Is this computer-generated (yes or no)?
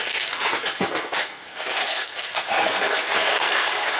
yes